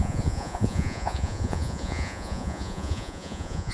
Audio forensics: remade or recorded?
remade